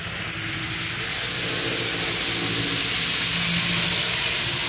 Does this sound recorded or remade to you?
recorded